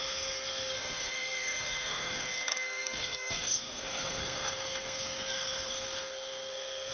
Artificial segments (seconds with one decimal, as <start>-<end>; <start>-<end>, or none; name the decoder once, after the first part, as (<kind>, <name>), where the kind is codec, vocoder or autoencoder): 0.0-6.9 (codec, SNAC)